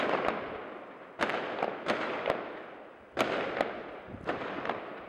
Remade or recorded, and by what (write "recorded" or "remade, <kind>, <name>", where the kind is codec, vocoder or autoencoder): recorded